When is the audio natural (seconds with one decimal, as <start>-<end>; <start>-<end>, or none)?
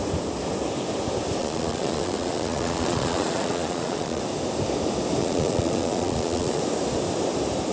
0.0-1.4; 4.2-5.2; 6.6-7.7